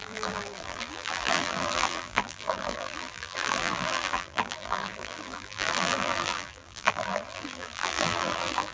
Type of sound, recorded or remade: remade